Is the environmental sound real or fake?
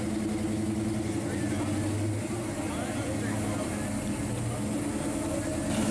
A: real